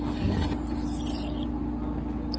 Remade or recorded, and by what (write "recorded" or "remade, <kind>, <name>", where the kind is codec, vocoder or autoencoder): recorded